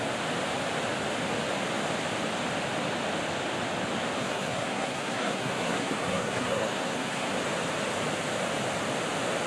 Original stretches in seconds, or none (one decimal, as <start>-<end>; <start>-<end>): 0.0-4.2; 7.3-9.5